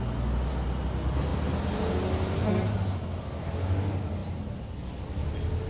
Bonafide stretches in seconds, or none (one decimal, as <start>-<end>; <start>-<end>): 0.0-5.7